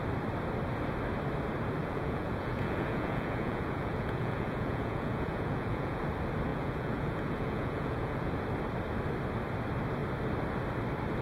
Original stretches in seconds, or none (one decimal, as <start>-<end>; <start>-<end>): 0.0-1.8; 6.0-6.5; 8.3-11.2

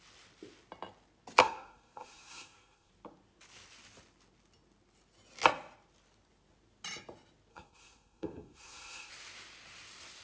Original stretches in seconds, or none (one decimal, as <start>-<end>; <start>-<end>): 0.0-1.4; 2.9-7.5; 9.1-10.2

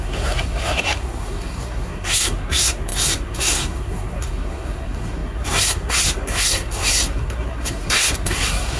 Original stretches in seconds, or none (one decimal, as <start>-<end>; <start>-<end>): none

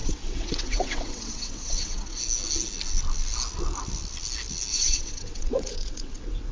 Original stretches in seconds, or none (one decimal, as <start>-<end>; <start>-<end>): 2.2-4.7

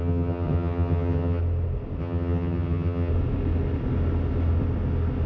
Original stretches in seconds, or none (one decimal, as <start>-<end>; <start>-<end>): 1.4-2.0; 3.1-5.3

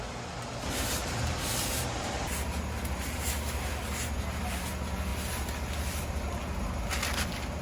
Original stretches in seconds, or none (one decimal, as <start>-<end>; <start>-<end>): 0.0-1.0; 2.6-7.6